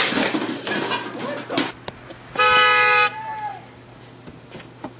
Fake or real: real